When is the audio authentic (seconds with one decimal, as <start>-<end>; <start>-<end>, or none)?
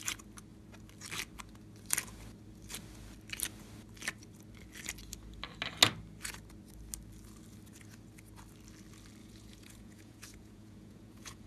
0.0-9.2